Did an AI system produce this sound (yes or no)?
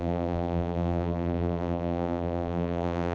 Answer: yes